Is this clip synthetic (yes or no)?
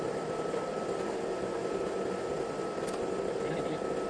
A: no